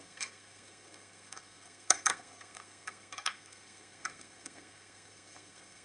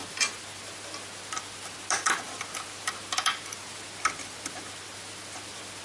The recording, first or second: second